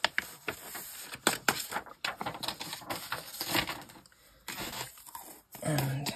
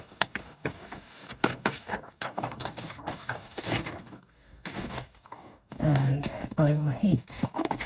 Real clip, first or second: first